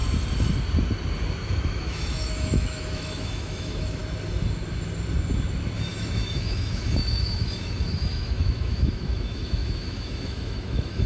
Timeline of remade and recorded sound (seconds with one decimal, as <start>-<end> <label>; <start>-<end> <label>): 0.0-1.3 recorded; 1.3-4.0 remade; 4.0-5.9 recorded; 5.9-11.1 remade